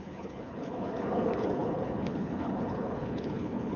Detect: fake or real fake